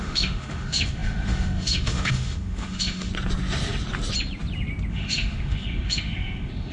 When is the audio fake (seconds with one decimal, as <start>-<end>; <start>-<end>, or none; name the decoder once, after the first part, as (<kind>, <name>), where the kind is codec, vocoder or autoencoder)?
0.0-3.1 (autoencoder, DAC-VAE); 4.9-6.7